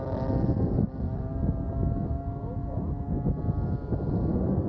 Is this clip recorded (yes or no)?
yes